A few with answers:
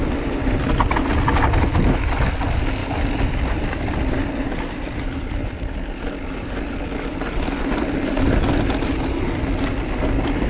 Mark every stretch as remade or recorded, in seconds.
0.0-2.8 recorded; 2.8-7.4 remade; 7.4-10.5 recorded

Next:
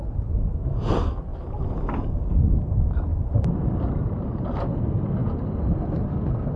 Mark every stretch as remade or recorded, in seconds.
0.0-1.3 recorded; 1.3-1.9 remade; 1.9-3.1 recorded; 3.1-4.4 remade; 4.4-6.6 recorded

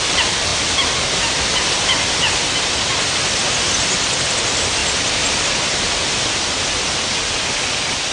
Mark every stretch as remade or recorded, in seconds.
0.0-8.1 recorded

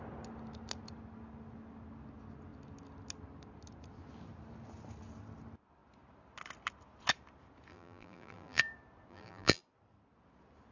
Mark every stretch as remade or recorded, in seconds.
0.0-7.7 recorded; 7.7-8.6 remade; 8.6-9.1 recorded; 9.1-9.6 remade; 9.6-10.7 recorded

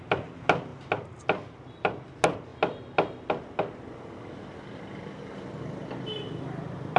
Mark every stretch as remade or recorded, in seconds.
0.0-0.7 remade; 0.7-1.7 recorded; 1.7-2.5 remade; 2.5-4.4 recorded; 4.4-7.0 remade